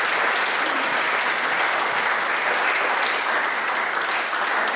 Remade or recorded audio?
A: recorded